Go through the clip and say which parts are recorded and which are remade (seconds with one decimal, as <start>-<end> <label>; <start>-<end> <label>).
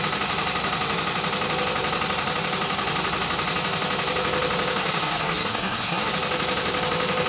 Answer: 0.0-4.8 recorded; 4.8-6.1 remade; 6.1-7.3 recorded